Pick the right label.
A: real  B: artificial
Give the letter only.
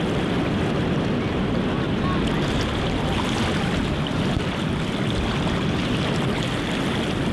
A